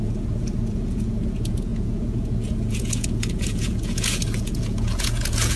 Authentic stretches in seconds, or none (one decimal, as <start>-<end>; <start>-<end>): none